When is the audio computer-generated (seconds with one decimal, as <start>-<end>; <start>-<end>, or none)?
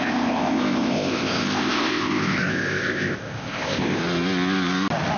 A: 0.0-4.0